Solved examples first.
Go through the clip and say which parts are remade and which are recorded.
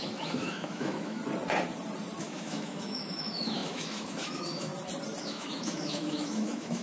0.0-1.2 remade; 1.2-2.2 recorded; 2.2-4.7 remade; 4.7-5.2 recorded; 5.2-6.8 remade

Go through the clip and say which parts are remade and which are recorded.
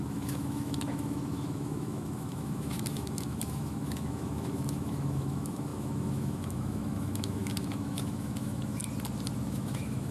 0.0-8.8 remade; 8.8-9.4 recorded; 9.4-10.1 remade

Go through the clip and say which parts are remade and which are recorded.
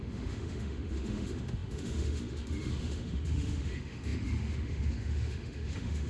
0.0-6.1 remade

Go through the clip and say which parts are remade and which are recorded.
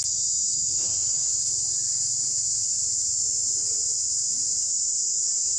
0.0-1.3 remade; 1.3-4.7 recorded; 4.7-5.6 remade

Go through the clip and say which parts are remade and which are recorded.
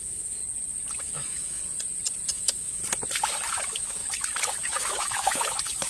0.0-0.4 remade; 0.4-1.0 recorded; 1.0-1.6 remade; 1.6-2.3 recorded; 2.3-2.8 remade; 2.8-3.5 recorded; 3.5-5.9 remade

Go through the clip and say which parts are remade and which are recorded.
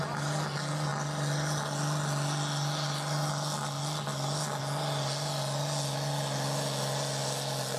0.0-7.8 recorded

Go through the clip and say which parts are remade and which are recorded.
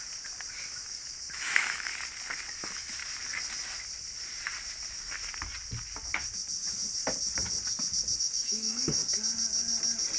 0.0-0.7 recorded; 0.7-1.9 remade; 1.9-2.5 recorded; 2.5-3.0 remade; 3.0-8.2 recorded; 8.2-9.0 remade; 9.0-10.2 recorded